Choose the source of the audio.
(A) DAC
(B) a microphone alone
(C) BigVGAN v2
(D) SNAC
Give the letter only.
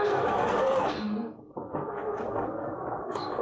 D